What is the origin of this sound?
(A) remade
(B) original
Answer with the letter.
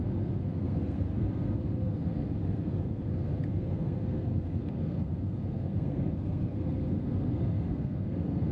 A